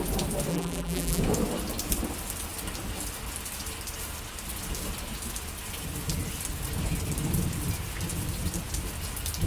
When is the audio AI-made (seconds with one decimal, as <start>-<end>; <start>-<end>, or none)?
0.5-1.2